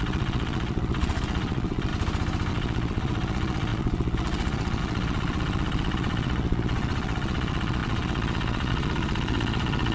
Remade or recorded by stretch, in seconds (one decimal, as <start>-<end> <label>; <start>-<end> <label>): 0.0-1.9 remade; 1.9-2.5 recorded; 2.5-9.9 remade